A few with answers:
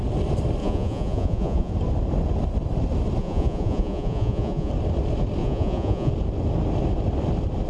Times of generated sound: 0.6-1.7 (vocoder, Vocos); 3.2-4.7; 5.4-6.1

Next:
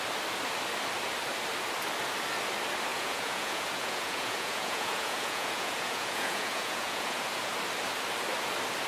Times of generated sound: 2.9-7.5 (vocoder, Vocos)

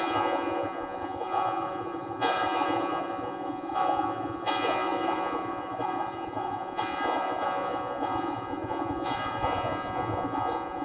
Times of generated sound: 0.0-10.8 (vocoder, Vocos)

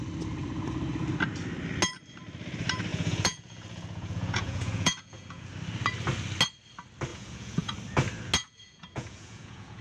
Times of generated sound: 2.9-5.5 (vocoder, Vocos); 7.1-7.7; 8.4-9.8

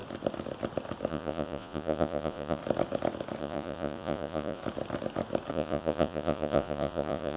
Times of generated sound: 1.1-2.6 (vocoder, Vocos); 3.4-4.6; 5.5-7.4

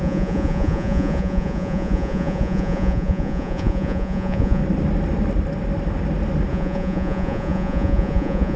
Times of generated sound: 0.0-4.6 (vocoder, Vocos); 6.5-8.6

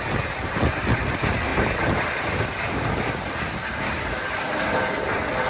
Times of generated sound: none

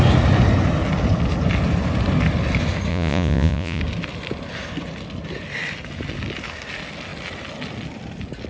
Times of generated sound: 2.9-3.8 (vocoder, Vocos)